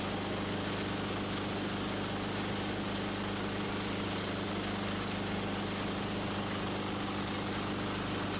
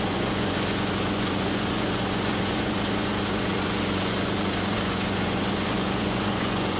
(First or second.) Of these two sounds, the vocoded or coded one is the second